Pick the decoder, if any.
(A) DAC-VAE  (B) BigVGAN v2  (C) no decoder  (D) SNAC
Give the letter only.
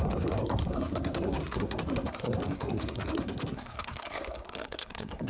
D